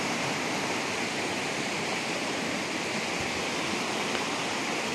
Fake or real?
real